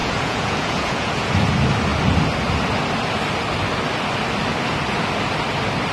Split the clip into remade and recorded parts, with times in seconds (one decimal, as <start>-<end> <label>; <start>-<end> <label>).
0.0-1.3 remade; 1.3-5.9 recorded